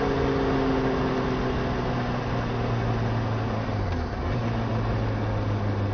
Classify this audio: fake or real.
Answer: real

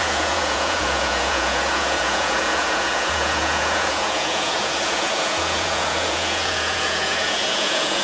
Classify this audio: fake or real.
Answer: fake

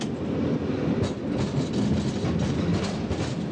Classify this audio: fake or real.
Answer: real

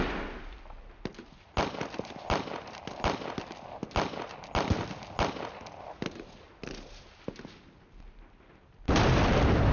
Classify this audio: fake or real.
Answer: real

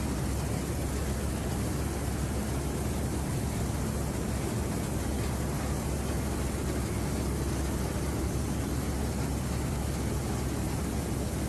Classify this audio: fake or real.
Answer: real